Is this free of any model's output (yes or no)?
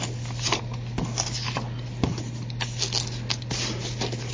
yes